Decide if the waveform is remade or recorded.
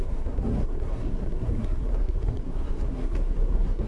remade